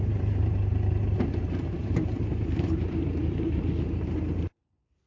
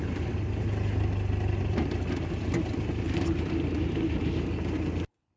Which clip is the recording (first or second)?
second